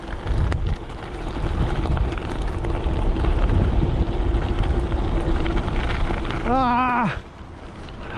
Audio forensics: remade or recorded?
recorded